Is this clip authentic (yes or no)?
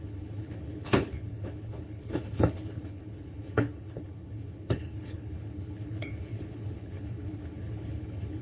no